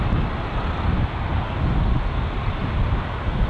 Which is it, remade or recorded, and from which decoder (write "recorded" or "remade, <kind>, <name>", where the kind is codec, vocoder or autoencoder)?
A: recorded